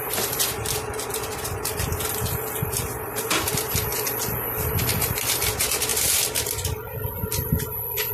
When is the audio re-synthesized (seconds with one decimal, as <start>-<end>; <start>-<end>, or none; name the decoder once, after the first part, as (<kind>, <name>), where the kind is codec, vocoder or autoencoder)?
none